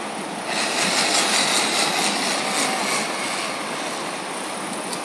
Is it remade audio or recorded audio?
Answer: recorded